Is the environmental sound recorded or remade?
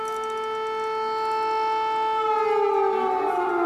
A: recorded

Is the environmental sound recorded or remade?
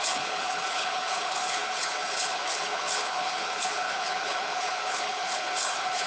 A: remade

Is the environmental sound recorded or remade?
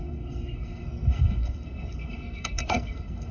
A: remade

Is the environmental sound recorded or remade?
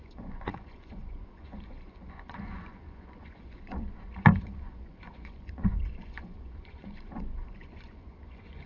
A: remade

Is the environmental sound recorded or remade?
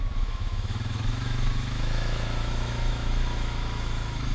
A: remade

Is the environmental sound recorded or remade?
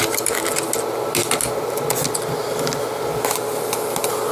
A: recorded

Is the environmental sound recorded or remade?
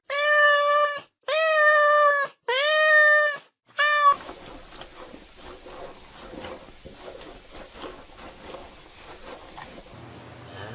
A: recorded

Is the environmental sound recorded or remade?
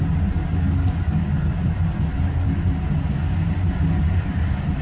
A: recorded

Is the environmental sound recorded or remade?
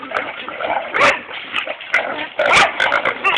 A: recorded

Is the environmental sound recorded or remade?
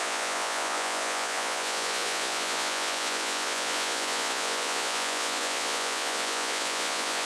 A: remade